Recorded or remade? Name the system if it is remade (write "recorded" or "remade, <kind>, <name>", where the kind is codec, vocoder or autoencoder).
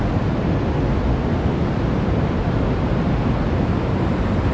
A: recorded